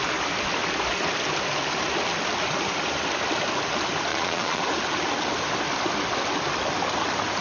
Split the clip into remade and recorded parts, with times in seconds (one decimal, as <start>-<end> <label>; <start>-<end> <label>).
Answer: 0.0-4.1 recorded; 4.1-4.6 remade; 4.6-7.4 recorded